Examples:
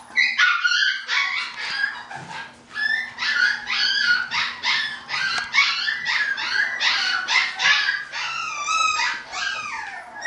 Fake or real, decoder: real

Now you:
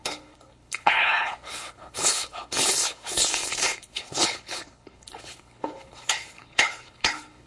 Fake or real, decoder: fake, codec, HILCodec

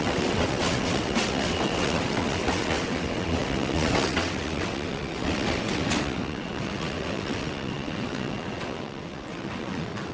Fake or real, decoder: fake, vocoder, WaveNeXt